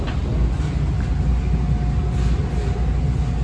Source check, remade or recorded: recorded